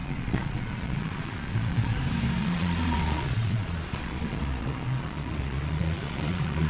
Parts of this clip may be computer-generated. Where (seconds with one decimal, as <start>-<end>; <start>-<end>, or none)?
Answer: 0.0-2.0; 2.4-6.7